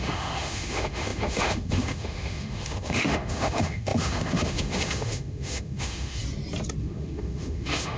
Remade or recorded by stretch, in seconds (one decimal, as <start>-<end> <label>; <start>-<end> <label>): 0.0-6.2 remade; 6.2-6.8 recorded; 6.8-8.0 remade